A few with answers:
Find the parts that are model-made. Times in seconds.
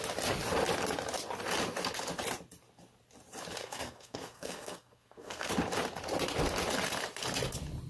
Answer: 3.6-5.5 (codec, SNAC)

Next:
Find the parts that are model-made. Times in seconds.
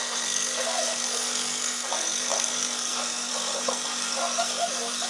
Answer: 0.0-5.1 (codec, SNAC)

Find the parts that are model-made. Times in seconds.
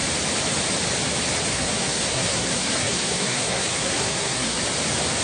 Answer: 1.5-4.6 (codec, SNAC)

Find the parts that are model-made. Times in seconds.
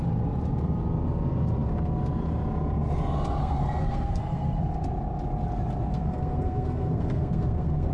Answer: 3.4-4.6 (codec, SNAC); 5.9-7.9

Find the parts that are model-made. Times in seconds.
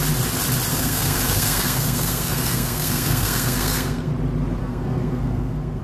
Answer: 0.7-4.1 (codec, SNAC); 4.6-5.8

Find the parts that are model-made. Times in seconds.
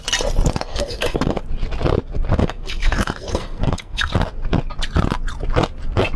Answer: 0.7-1.4 (codec, SNAC); 2.4-4.1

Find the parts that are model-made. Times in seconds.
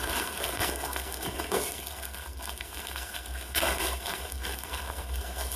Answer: 0.0-5.6 (codec, SNAC)